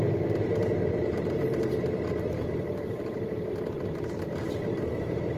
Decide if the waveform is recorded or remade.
remade